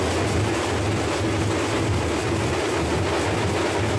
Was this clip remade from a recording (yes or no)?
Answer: no